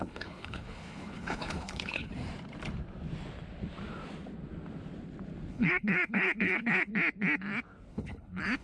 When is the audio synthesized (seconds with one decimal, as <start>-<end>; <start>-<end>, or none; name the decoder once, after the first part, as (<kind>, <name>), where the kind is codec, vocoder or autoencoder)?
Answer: 0.0-2.1 (codec, HILCodec); 5.5-6.9; 7.9-8.6